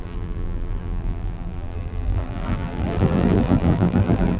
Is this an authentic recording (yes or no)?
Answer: no